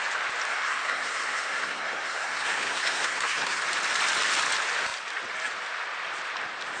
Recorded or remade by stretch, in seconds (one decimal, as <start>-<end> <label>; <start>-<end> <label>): 0.0-0.5 recorded; 0.5-3.6 remade; 3.6-6.8 recorded